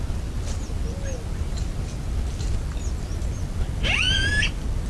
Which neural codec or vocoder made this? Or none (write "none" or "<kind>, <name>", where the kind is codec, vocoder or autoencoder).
none